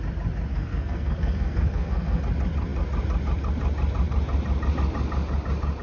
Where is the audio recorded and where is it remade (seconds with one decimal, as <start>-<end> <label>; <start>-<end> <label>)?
0.0-0.5 recorded; 0.5-2.2 remade; 2.2-5.8 recorded